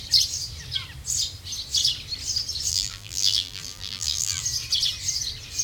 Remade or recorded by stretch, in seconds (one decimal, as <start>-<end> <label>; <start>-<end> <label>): 0.0-2.7 recorded; 2.7-4.4 remade; 4.4-5.6 recorded